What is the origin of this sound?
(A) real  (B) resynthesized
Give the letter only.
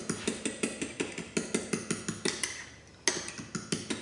A